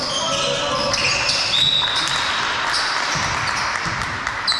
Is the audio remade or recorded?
recorded